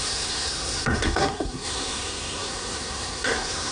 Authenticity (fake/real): fake